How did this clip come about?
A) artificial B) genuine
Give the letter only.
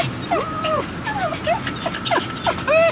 B